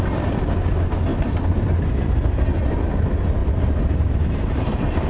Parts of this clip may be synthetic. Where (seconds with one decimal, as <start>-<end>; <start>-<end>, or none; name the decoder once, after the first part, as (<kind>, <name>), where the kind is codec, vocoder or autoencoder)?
1.1-2.5 (vocoder, BigVGAN v2); 3.4-4.6